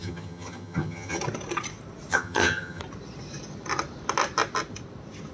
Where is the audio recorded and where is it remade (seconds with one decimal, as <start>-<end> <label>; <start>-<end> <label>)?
0.0-1.2 remade; 1.2-2.1 recorded; 2.1-2.8 remade; 2.8-5.3 recorded